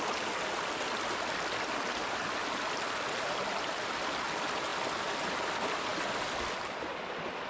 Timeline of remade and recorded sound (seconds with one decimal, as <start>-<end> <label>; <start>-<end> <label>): 0.0-7.5 recorded